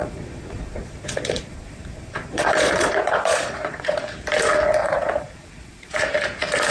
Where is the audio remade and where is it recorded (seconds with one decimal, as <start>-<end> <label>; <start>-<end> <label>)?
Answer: 0.0-4.0 remade; 4.0-4.8 recorded; 4.8-5.9 remade; 5.9-6.7 recorded